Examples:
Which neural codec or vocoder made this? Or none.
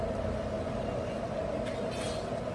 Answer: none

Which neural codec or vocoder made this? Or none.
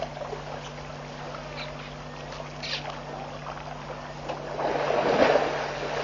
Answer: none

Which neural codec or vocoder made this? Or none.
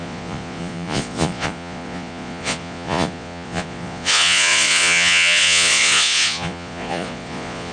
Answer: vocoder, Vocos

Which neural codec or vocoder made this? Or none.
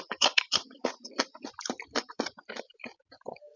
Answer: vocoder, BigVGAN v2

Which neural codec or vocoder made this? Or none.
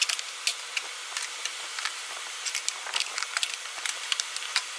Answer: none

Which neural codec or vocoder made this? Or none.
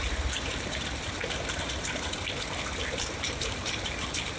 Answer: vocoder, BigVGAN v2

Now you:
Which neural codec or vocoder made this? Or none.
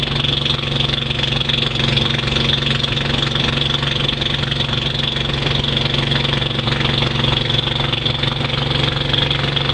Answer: none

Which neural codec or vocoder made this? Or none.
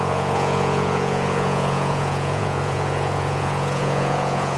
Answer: vocoder, Vocos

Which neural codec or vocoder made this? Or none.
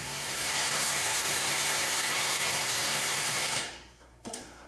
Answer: codec, SNAC